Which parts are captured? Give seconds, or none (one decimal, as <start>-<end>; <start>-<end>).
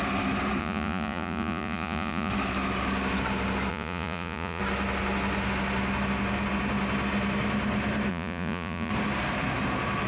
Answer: 0.0-0.6; 2.3-3.7; 4.6-8.1; 8.9-10.1